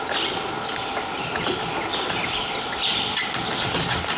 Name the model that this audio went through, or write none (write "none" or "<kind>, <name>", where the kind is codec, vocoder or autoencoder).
none